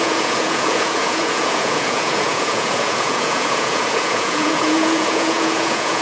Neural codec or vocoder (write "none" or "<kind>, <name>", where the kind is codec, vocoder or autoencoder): vocoder, Vocos